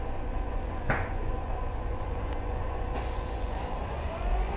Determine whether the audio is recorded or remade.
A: remade